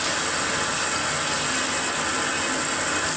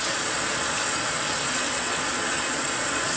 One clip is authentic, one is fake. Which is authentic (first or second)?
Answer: first